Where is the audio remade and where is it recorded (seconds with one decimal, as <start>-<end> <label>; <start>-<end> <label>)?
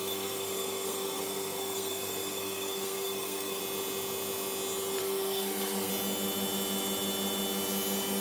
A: 0.0-3.6 remade; 3.6-5.0 recorded; 5.0-5.9 remade; 5.9-8.2 recorded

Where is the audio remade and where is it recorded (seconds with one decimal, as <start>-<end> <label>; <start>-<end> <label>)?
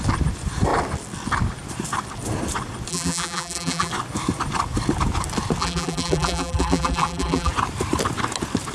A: 0.0-2.9 recorded; 2.9-3.9 remade; 3.9-5.6 recorded; 5.6-7.5 remade; 7.5-8.7 recorded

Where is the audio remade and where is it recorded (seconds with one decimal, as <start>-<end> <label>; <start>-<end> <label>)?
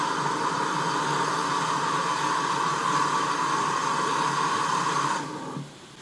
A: 0.0-6.0 recorded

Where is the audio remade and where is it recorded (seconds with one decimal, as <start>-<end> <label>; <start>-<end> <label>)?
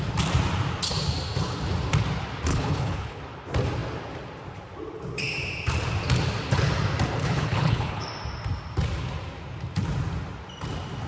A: 0.0-2.5 recorded; 2.5-3.2 remade; 3.2-7.2 recorded; 7.2-8.0 remade; 8.0-11.1 recorded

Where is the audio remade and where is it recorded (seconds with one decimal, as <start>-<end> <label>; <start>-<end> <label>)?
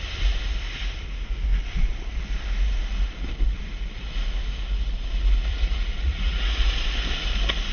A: 0.0-5.5 recorded; 5.5-6.7 remade; 6.7-7.7 recorded